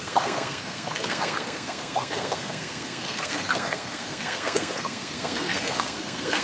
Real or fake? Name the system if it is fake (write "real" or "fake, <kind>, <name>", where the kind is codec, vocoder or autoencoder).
fake, codec, SNAC